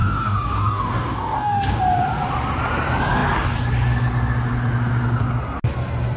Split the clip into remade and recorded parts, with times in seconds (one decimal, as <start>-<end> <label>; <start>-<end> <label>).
0.0-1.8 remade; 1.8-6.2 recorded